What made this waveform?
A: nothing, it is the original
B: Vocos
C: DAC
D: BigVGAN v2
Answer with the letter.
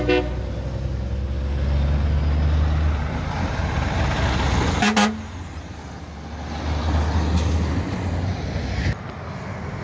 A